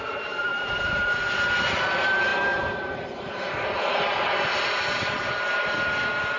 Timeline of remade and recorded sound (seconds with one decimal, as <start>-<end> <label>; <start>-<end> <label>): 0.0-6.4 recorded